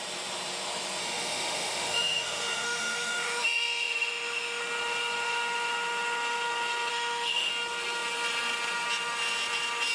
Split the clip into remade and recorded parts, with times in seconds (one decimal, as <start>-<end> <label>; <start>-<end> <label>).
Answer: 0.0-1.0 recorded; 1.0-4.6 remade; 4.6-6.9 recorded; 6.9-7.5 remade; 7.5-9.9 recorded